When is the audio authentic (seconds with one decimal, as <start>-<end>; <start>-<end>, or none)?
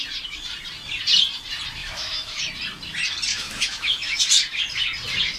0.0-1.8; 2.4-3.3; 4.2-5.4